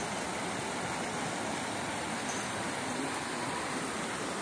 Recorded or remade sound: recorded